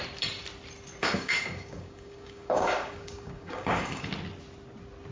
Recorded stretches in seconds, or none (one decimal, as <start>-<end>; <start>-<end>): 0.0-1.0; 4.1-5.1